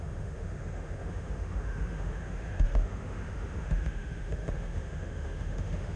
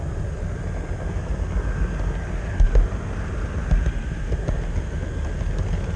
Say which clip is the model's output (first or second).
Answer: first